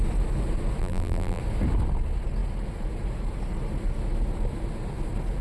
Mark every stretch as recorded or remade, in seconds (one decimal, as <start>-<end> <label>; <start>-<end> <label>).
0.0-0.8 recorded; 0.8-1.4 remade; 1.4-5.4 recorded